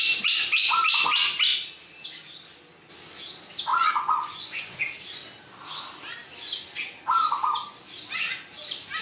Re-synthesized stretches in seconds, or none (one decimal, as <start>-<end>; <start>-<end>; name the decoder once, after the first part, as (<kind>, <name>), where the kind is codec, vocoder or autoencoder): 3.7-4.8 (vocoder, Vocos)